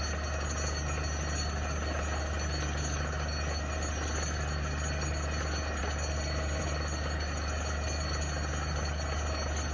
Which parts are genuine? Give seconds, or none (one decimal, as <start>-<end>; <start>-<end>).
0.0-9.7